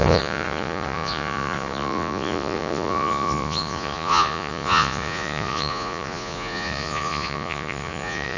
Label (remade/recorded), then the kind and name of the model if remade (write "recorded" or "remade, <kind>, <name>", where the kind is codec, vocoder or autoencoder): remade, vocoder, Vocos